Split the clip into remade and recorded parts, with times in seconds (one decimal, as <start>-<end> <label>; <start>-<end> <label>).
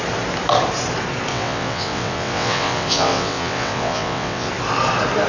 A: 0.0-1.3 recorded; 1.3-4.5 remade; 4.5-5.3 recorded